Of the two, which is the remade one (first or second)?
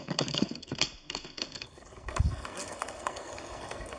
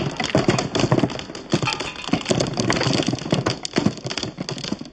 first